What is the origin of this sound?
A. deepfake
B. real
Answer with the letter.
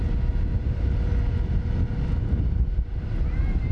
B